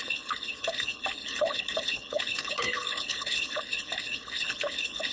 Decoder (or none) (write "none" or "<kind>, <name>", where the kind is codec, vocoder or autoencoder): codec, HILCodec